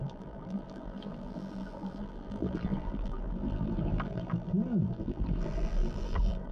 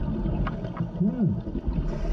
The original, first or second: second